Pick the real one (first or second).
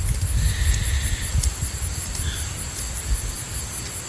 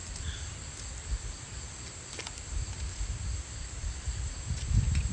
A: first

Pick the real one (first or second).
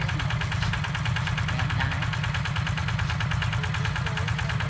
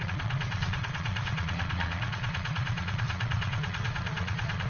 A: first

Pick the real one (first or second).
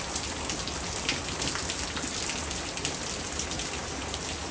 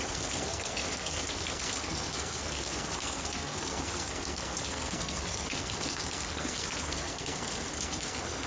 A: first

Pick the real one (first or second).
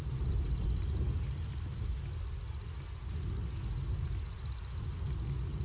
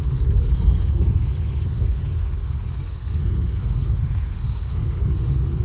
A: first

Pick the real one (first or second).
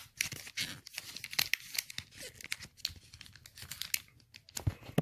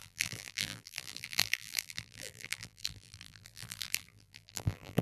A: first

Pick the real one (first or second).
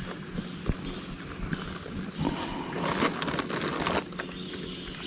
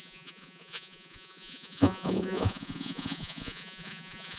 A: first